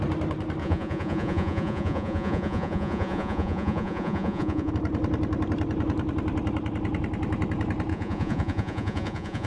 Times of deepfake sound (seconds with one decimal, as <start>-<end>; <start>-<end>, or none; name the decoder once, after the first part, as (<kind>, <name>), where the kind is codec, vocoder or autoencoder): 0.6-4.7 (vocoder, Vocos); 7.9-9.5